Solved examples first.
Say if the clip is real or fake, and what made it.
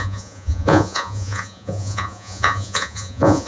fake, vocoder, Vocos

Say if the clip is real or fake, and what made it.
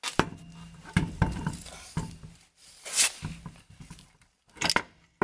real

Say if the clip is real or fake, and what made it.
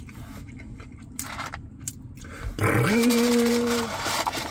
fake, vocoder, BigVGAN v2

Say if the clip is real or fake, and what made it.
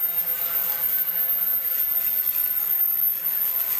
real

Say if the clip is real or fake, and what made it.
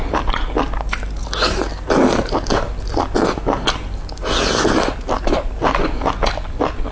real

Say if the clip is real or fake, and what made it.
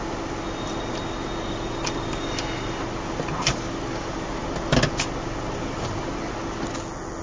real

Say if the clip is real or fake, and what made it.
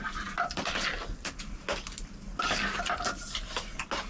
real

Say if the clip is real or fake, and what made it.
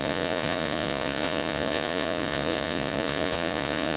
fake, vocoder, Vocos